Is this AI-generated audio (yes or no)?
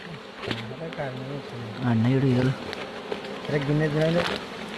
no